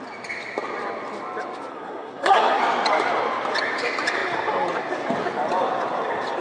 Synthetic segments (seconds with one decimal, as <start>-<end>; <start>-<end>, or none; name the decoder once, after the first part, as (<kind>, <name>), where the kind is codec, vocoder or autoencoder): 1.7-2.6 (codec, SNAC)